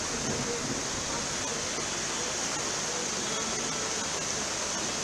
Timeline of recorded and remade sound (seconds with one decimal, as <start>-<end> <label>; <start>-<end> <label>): 0.0-5.0 recorded